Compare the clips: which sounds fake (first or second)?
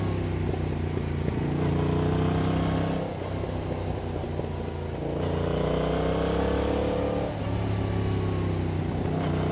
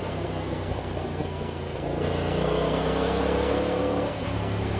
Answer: second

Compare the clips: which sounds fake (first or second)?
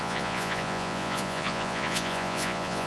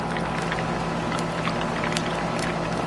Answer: first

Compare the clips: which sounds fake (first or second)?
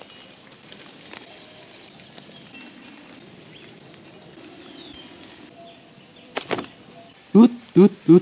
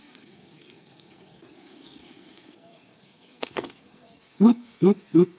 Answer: second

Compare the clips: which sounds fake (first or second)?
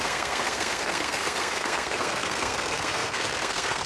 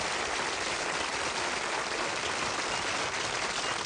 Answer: first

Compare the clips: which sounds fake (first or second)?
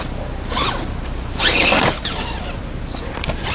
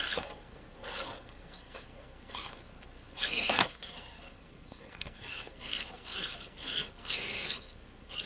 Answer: second